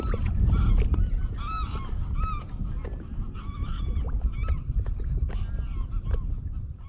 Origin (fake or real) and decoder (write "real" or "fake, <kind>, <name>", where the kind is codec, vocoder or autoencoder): real